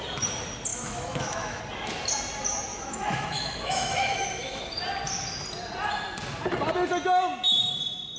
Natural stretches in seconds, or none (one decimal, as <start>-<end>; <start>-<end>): 0.0-0.7; 1.6-2.7; 4.6-8.2